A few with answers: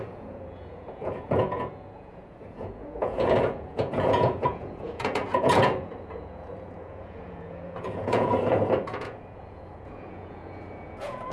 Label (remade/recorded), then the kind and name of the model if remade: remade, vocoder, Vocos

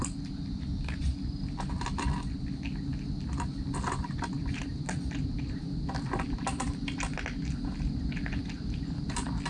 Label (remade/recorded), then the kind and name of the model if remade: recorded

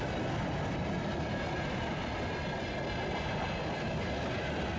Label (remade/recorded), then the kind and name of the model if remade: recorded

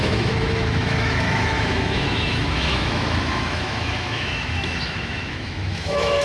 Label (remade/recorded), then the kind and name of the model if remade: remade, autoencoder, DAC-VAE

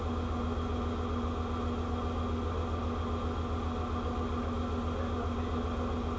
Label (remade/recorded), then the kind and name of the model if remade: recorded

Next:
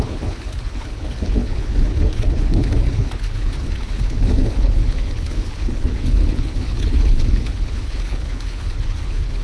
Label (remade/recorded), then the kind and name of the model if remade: remade, codec, HILCodec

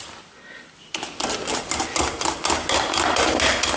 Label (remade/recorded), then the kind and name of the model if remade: recorded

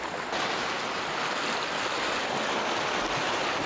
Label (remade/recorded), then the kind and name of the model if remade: recorded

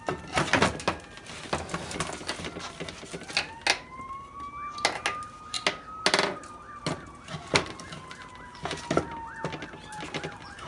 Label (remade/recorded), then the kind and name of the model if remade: recorded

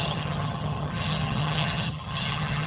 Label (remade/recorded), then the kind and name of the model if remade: remade, vocoder, HiFi-GAN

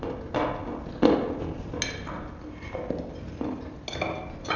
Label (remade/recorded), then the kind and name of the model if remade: recorded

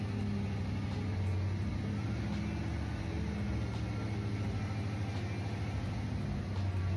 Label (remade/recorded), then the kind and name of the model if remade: recorded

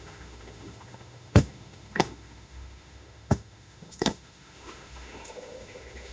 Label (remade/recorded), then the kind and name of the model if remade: remade, autoencoder, DAC-VAE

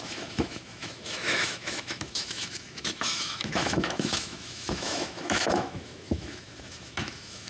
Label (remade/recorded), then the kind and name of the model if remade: remade, autoencoder, DAC-VAE